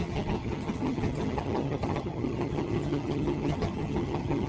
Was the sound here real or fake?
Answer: fake